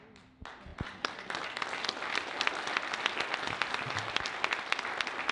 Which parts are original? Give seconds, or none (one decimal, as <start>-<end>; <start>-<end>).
0.0-5.3